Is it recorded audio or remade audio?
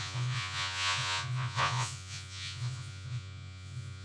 remade